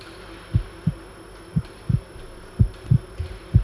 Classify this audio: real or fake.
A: real